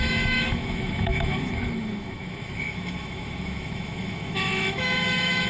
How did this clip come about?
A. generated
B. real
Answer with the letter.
A